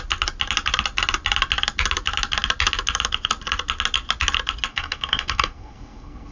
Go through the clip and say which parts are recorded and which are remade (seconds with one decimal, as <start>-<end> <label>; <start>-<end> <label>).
0.0-4.7 recorded; 4.7-6.3 remade